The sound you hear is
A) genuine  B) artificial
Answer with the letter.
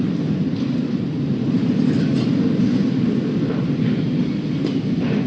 A